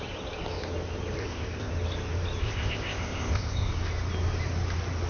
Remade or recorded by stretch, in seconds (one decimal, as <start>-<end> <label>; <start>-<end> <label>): 0.0-1.2 recorded; 1.2-1.7 remade; 1.7-2.4 recorded; 2.4-3.7 remade; 3.7-5.1 recorded

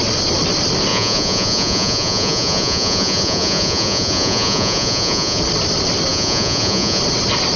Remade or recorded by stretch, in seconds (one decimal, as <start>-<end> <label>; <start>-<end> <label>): 0.0-0.9 recorded; 0.9-5.4 remade; 5.4-6.1 recorded; 6.1-7.0 remade; 7.0-7.6 recorded

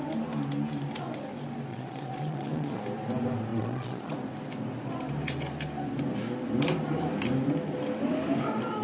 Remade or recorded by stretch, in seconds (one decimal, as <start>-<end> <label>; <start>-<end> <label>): 0.0-1.7 recorded; 1.7-2.8 remade; 2.8-3.5 recorded; 3.5-4.1 remade; 4.1-8.8 recorded

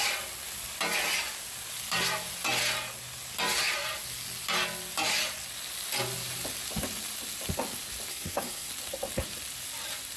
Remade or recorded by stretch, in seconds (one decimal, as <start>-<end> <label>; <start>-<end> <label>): 0.0-8.1 recorded; 8.1-8.7 remade; 8.7-10.2 recorded

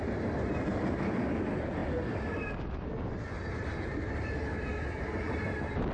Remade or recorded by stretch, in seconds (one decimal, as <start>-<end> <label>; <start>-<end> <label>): 0.0-5.9 recorded

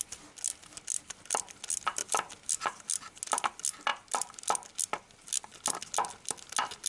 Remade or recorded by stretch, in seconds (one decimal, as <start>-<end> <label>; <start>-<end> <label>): 0.0-6.9 recorded